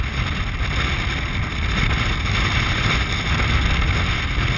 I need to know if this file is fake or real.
real